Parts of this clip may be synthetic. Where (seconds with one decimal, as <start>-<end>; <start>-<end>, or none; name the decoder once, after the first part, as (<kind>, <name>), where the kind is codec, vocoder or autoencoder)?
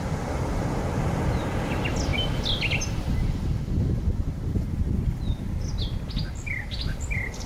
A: none